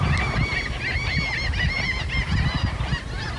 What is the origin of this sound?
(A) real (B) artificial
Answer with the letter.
A